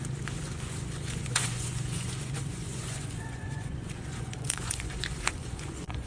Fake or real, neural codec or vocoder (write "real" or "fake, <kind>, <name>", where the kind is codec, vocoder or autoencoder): fake, vocoder, Vocos